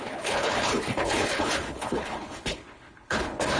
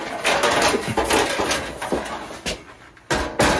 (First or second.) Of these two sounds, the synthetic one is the first